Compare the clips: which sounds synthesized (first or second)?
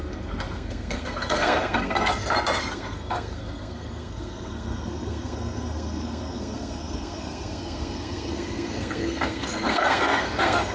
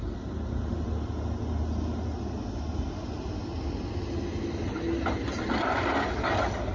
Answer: first